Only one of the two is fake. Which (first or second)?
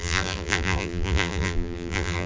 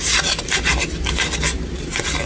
first